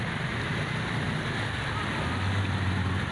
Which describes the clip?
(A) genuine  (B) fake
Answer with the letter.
A